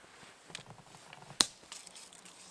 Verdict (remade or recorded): recorded